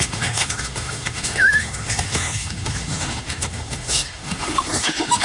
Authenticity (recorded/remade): remade